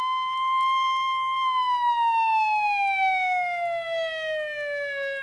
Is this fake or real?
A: real